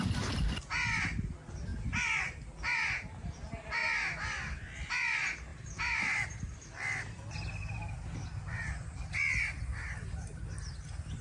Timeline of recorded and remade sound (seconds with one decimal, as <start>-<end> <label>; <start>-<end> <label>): 0.0-5.5 recorded; 5.5-9.4 remade; 9.4-11.2 recorded